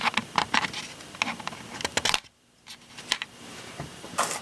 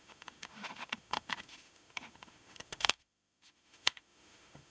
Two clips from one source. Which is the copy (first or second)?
second